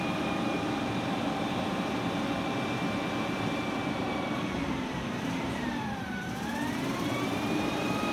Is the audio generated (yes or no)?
yes